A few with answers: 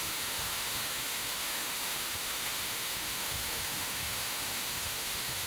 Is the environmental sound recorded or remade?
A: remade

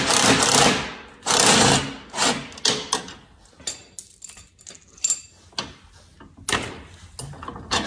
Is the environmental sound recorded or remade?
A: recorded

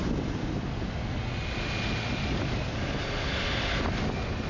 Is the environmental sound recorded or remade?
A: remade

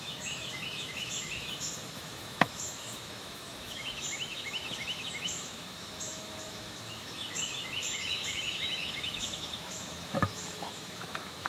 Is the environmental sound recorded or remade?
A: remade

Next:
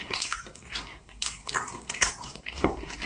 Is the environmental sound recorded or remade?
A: remade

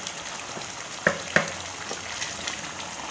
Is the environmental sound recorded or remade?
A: recorded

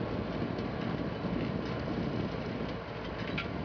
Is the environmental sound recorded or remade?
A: recorded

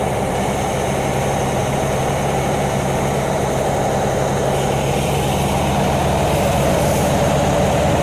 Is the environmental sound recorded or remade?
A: remade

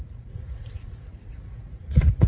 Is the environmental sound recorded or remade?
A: remade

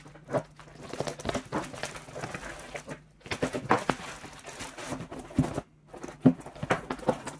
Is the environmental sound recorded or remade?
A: recorded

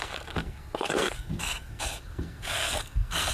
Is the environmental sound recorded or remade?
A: remade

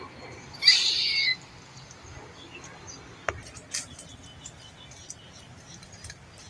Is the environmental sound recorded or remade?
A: recorded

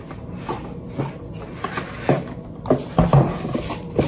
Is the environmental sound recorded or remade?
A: recorded